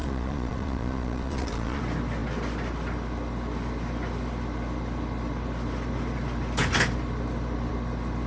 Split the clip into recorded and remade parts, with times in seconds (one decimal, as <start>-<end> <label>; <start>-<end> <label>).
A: 0.0-1.8 remade; 1.8-8.3 recorded